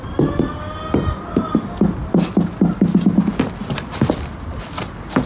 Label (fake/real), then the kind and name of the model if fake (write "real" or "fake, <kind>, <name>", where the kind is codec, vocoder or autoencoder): real